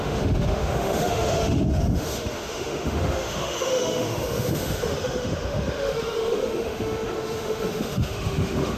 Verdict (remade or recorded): remade